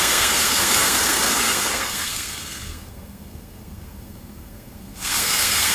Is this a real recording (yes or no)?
no